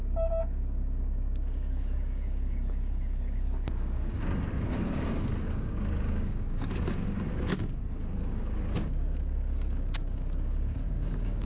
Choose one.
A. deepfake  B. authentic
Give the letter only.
A